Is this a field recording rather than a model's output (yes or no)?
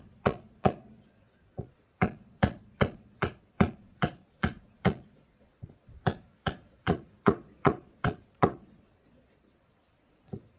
no